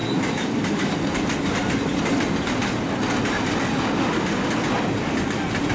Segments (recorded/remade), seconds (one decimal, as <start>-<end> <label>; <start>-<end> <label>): 0.0-5.7 recorded